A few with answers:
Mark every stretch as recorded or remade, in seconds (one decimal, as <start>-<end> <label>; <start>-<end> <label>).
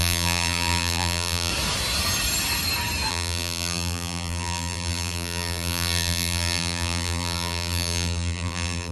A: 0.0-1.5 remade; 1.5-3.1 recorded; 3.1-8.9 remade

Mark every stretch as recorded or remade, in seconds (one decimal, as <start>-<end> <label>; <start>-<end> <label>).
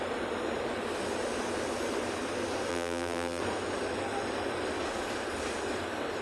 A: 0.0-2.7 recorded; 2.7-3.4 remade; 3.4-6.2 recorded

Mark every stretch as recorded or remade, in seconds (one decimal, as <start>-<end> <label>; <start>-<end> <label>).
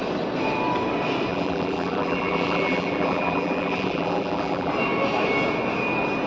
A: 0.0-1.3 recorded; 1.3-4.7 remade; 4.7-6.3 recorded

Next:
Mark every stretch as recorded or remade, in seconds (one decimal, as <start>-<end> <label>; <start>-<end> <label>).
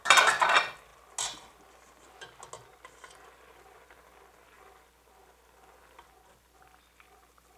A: 0.0-7.6 recorded